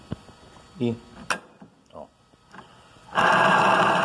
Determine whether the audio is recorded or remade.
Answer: recorded